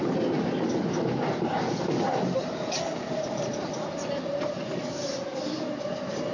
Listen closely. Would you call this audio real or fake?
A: real